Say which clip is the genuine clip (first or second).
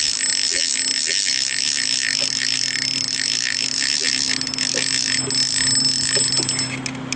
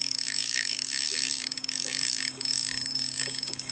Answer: first